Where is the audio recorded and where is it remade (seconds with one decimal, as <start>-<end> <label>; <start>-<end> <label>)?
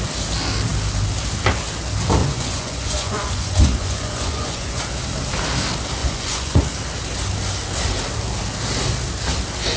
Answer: 0.0-2.2 recorded; 2.2-4.8 remade; 4.8-6.0 recorded; 6.0-6.6 remade; 6.6-9.8 recorded